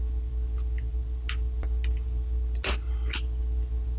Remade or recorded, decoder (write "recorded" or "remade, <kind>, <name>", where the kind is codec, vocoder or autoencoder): recorded